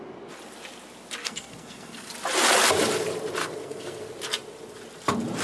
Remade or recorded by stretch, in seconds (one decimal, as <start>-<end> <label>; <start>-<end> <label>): 0.0-1.2 recorded; 1.2-2.1 remade; 2.1-3.4 recorded; 3.4-4.0 remade; 4.0-5.4 recorded